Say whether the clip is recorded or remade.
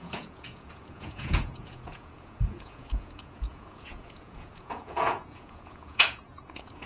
remade